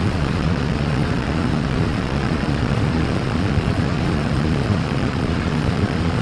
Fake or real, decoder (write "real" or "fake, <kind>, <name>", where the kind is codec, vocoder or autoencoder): fake, vocoder, Vocos